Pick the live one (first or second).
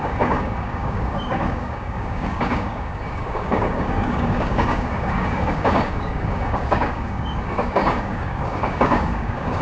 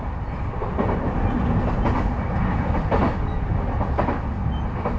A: second